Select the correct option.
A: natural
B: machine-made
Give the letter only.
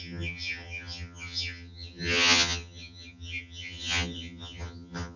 B